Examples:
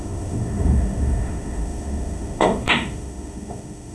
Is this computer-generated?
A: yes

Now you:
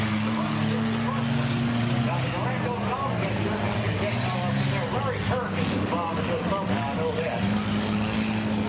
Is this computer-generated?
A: no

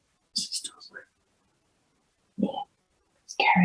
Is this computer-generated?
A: no